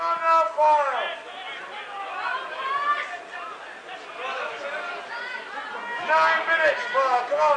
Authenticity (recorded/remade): recorded